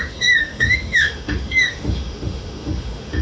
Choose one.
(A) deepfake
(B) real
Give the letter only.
A